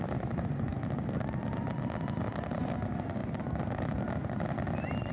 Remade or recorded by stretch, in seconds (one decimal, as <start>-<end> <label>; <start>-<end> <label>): 0.0-0.7 remade; 0.7-1.4 recorded; 1.4-5.1 remade